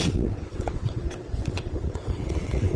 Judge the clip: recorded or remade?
remade